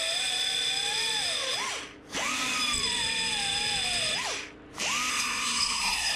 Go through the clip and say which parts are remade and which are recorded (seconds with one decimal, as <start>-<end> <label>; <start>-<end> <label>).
0.0-5.1 recorded; 5.1-6.2 remade